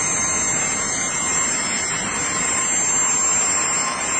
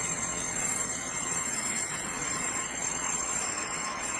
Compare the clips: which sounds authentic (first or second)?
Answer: first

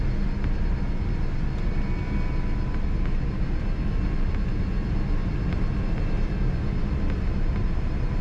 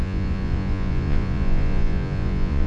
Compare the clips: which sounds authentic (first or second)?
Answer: first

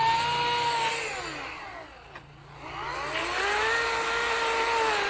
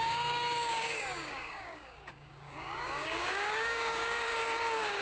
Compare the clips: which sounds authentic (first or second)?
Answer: first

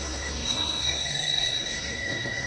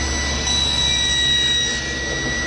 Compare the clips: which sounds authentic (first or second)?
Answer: second